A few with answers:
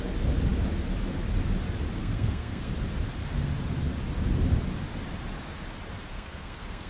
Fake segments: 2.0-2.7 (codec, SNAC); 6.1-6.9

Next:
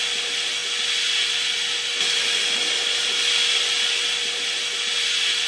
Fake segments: none

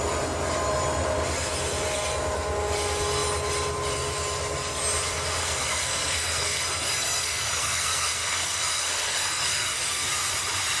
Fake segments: 5.4-6.6 (codec, SNAC); 7.0-10.1

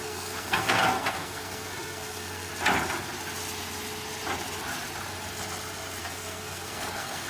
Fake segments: 0.0-2.5 (codec, SNAC); 6.0-7.3